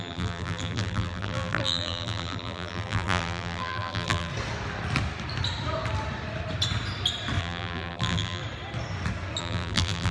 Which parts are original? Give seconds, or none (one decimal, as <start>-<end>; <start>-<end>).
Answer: 4.3-7.4; 8.4-9.4